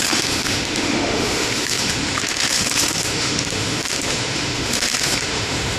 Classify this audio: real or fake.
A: fake